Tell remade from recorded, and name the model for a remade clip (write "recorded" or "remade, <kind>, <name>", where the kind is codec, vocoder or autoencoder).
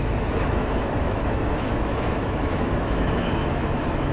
remade, autoencoder, DAC-VAE